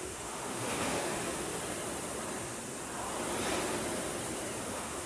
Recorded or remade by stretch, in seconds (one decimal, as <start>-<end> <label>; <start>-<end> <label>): 0.0-1.5 remade; 1.5-4.6 recorded; 4.6-5.1 remade